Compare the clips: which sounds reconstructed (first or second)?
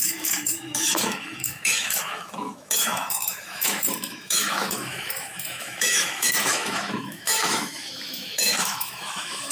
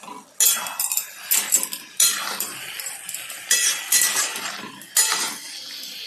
first